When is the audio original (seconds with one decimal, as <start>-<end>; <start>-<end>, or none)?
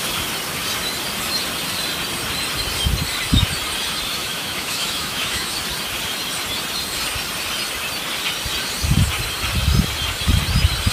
0.0-4.2; 5.6-10.9